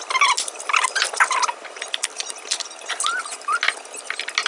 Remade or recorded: recorded